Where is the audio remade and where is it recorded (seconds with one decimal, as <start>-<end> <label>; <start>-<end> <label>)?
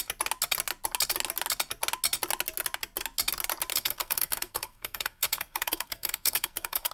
0.0-3.7 recorded; 3.7-6.9 remade